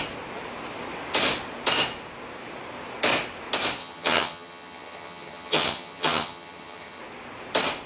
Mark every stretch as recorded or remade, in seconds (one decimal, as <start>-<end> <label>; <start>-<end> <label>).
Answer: 0.0-3.8 recorded; 3.8-7.0 remade; 7.0-7.9 recorded